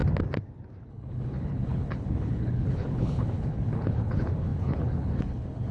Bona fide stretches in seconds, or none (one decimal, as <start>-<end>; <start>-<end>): 0.0-0.9